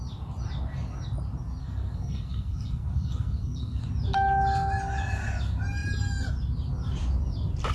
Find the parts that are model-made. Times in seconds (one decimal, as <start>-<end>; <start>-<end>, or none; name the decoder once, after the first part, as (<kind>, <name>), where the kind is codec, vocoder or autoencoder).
1.6-3.8 (codec, SNAC)